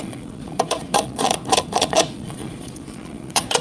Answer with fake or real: fake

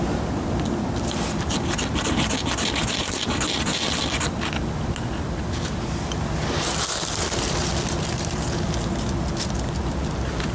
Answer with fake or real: real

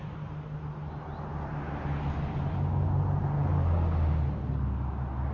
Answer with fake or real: real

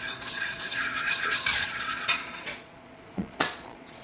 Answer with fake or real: fake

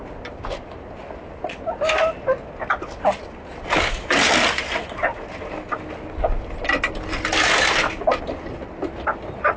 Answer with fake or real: real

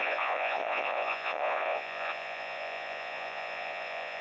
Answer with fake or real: fake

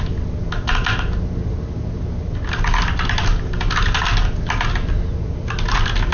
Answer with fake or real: real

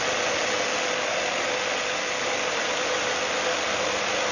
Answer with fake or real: real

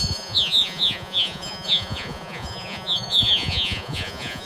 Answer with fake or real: fake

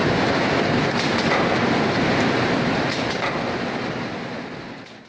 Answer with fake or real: real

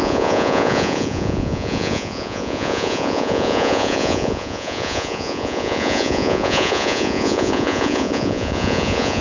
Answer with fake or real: fake